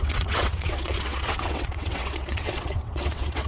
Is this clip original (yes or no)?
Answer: no